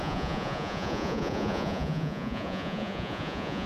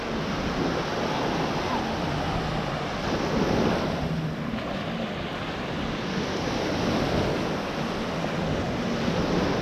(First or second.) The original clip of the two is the second